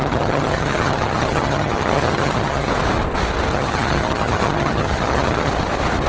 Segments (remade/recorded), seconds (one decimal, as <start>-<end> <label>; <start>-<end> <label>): 0.0-2.7 remade; 2.7-3.5 recorded; 3.5-5.5 remade; 5.5-6.1 recorded